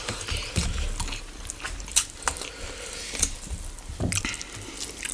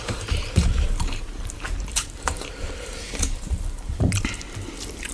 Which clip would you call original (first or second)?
first